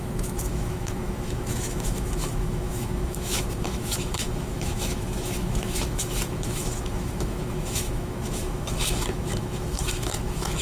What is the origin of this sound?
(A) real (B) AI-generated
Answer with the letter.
B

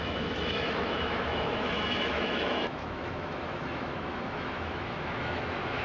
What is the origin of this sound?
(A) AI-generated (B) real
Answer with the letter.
A